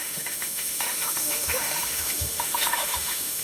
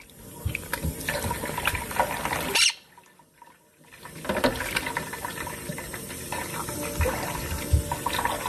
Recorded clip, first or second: second